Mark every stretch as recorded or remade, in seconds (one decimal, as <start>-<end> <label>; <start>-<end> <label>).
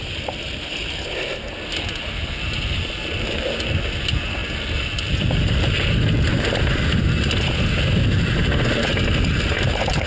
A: 0.0-10.1 recorded